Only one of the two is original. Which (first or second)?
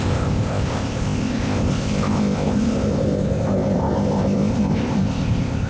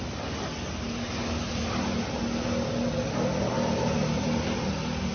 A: second